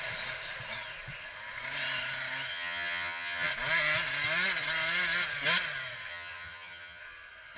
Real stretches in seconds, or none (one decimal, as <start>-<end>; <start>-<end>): 0.0-2.5; 3.5-6.1; 7.0-7.6